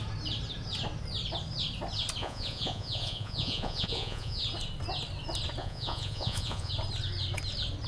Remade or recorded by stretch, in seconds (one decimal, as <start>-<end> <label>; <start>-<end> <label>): 0.0-2.2 recorded; 2.2-4.4 remade; 4.4-5.6 recorded; 5.6-6.7 remade; 6.7-7.9 recorded